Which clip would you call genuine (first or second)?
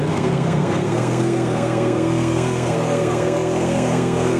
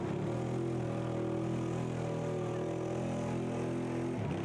second